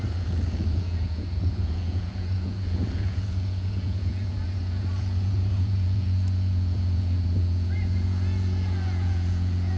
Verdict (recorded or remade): remade